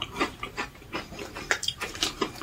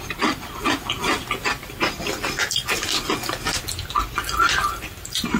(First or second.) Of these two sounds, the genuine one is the second